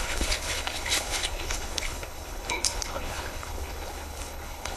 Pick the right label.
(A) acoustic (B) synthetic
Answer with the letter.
B